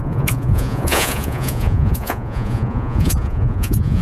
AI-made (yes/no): yes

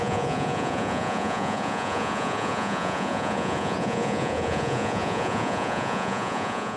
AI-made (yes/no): yes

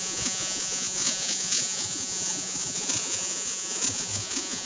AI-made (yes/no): yes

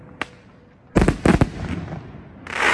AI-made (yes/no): no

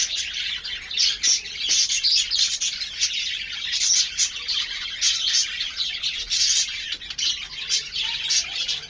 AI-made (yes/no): no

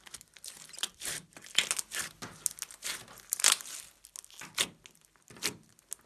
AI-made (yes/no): no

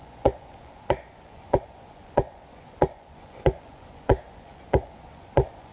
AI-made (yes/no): yes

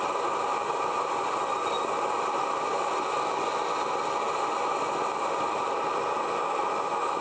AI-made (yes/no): no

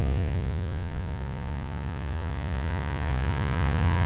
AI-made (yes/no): yes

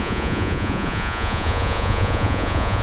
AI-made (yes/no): yes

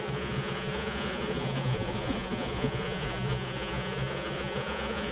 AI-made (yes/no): yes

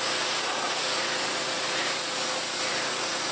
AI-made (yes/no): yes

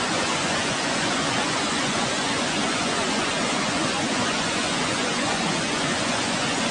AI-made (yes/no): yes